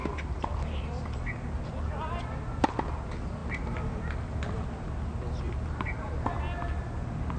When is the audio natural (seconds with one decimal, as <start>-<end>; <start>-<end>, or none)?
0.0-7.4